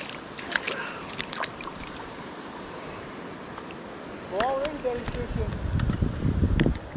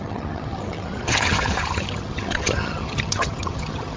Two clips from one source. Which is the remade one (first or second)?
second